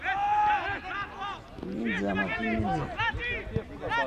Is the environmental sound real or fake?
real